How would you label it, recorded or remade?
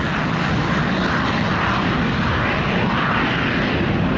recorded